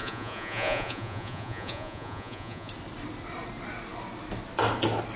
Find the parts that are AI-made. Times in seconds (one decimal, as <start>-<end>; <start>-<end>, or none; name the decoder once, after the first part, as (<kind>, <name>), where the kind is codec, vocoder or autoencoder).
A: 0.0-2.7 (vocoder, Vocos)